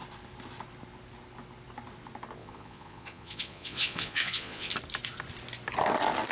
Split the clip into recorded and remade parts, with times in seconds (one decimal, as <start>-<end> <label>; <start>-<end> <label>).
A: 0.0-2.4 recorded; 2.4-4.7 remade; 4.7-6.3 recorded